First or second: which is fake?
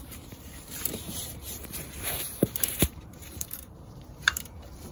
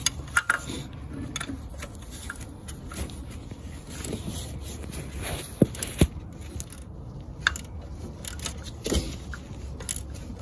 first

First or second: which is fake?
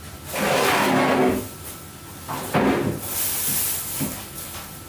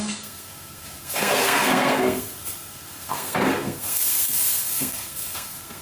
second